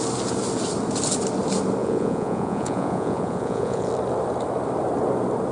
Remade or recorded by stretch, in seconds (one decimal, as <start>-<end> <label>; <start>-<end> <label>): 0.0-1.8 recorded; 1.8-3.9 remade; 3.9-5.5 recorded